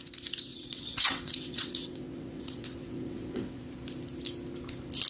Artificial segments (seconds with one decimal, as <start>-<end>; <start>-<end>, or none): 0.5-3.6